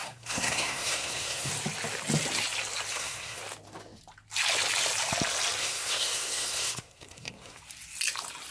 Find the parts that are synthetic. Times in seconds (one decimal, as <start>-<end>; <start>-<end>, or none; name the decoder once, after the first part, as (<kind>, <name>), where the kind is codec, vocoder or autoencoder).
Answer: 0.0-1.5 (codec, SNAC); 2.9-3.4; 5.6-7.6